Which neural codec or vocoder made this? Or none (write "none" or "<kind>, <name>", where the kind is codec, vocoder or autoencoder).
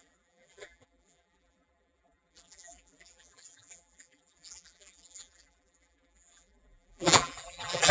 vocoder, BigVGAN v2